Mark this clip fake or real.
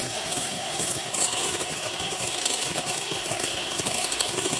fake